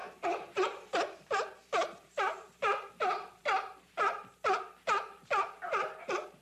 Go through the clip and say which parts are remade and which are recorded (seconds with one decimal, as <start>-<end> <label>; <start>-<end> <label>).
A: 0.0-2.9 remade; 2.9-6.4 recorded